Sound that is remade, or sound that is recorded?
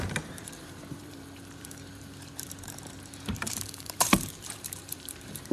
remade